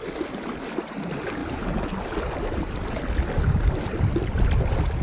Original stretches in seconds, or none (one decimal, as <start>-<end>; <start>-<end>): 0.0-5.0